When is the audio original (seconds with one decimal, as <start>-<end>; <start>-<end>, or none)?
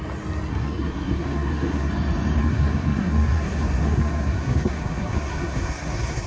0.0-0.5; 1.9-2.4